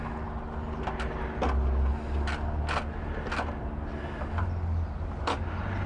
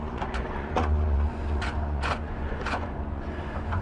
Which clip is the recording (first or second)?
first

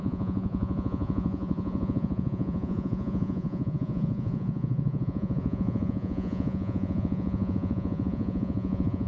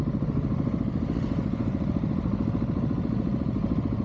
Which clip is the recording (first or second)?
second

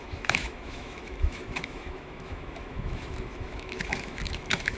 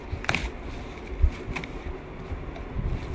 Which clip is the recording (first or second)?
second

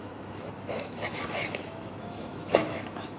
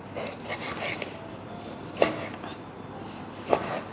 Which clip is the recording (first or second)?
second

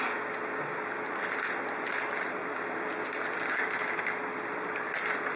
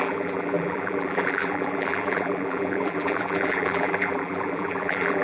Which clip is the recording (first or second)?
first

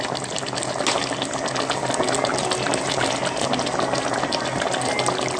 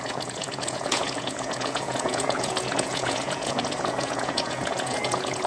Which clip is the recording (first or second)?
first